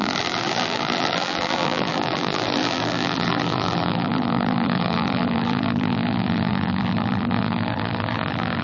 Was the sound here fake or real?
fake